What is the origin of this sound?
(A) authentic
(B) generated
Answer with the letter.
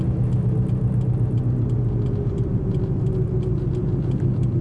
A